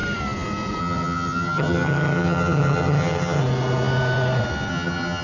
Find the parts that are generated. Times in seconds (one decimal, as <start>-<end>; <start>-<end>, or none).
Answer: 0.8-3.4; 4.7-5.2